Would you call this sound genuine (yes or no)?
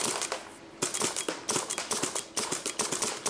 yes